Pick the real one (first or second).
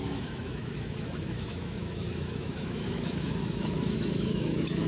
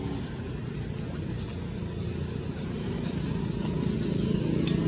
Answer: second